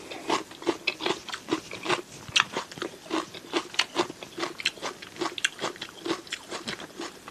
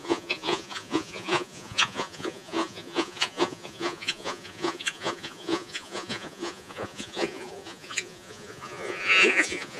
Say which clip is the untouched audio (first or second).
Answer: first